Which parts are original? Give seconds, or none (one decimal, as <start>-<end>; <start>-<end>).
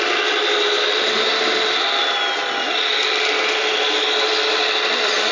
0.0-1.0; 1.8-5.3